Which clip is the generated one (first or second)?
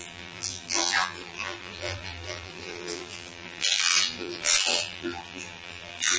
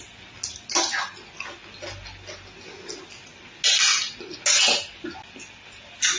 first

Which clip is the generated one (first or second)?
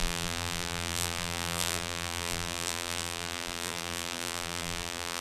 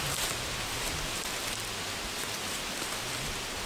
first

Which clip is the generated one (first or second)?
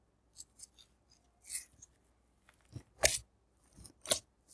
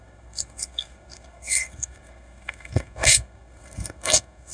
second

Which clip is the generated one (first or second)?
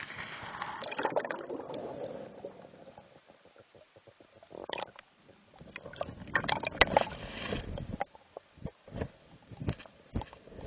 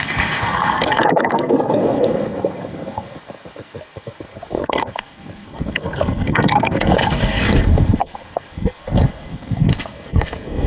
second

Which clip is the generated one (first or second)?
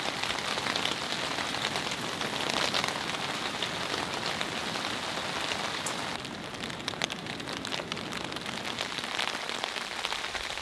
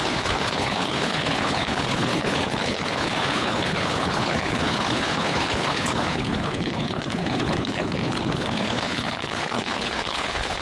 second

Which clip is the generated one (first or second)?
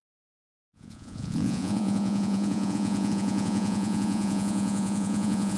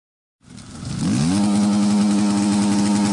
first